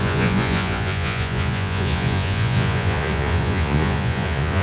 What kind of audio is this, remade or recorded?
remade